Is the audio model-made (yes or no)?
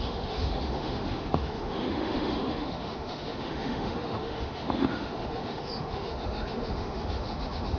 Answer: yes